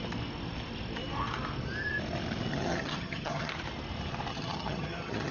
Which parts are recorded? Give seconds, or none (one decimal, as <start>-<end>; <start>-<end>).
0.0-2.5; 3.5-4.3